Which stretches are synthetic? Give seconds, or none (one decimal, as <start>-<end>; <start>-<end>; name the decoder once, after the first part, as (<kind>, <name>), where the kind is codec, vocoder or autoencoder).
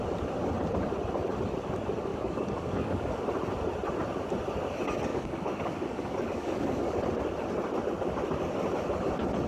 2.1-3.2 (codec, DAC); 5.1-7.0